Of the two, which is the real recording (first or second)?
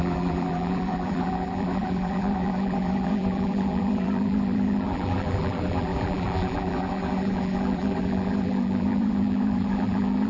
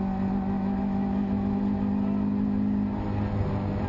second